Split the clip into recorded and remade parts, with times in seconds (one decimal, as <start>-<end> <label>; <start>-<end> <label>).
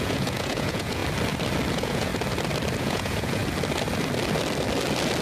0.0-1.0 remade; 1.0-1.7 recorded; 1.7-2.1 remade; 2.1-2.8 recorded; 2.8-3.4 remade; 3.4-5.2 recorded